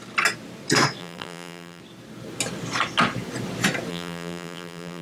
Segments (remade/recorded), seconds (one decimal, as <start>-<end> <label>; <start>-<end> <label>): 0.0-1.0 recorded; 1.0-1.8 remade; 1.8-3.9 recorded; 3.9-5.0 remade